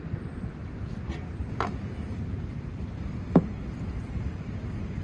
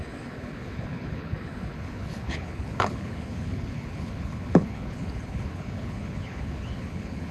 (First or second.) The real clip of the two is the first